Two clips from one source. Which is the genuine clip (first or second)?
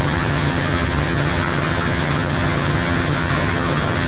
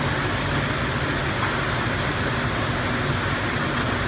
second